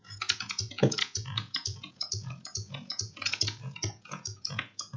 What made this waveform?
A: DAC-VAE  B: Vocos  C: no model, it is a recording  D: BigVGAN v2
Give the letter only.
B